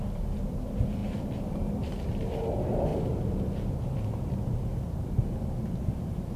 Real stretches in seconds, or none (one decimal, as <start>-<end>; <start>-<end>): 0.0-6.4